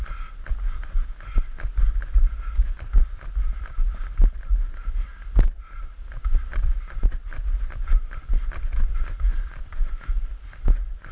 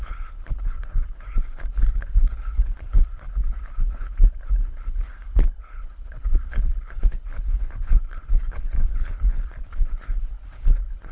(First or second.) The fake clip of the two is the second